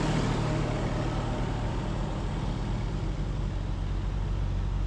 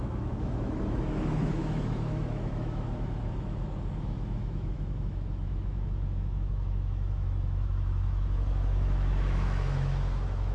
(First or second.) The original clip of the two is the first